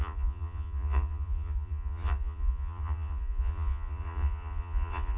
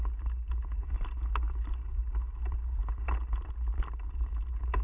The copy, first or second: first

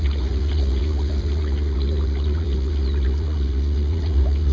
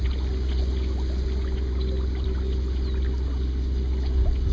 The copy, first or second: first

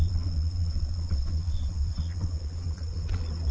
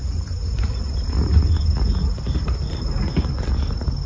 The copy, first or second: first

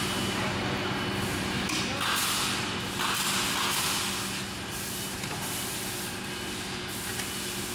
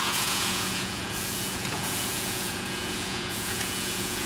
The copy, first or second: second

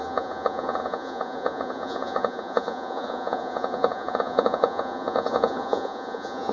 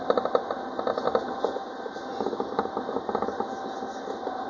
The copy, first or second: first